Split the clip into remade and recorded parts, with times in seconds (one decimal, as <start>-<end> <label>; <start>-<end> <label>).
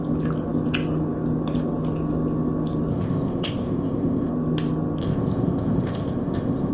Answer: 0.0-2.9 recorded; 2.9-4.3 remade; 4.3-5.0 recorded; 5.0-6.7 remade